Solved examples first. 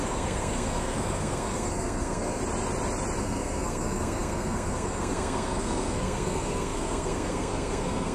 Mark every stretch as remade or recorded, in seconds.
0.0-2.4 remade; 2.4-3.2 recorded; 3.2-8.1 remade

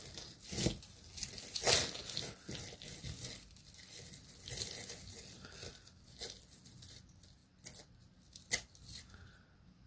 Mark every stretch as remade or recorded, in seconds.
0.0-9.9 recorded

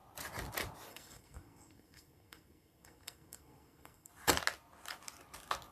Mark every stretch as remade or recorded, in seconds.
0.0-0.9 recorded; 0.9-4.1 remade; 4.1-5.7 recorded

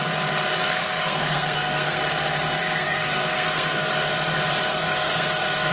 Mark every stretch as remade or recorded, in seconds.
0.0-0.6 recorded; 0.6-2.0 remade; 2.0-2.6 recorded; 2.6-3.9 remade; 3.9-4.7 recorded; 4.7-5.7 remade

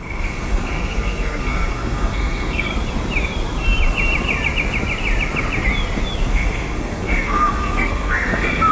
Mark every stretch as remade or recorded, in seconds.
0.0-2.7 remade; 2.7-6.3 recorded; 6.3-8.7 remade

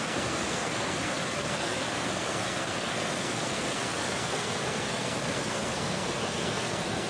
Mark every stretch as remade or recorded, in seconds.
0.0-7.1 remade

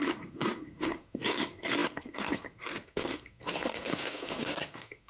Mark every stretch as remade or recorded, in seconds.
0.0-5.1 remade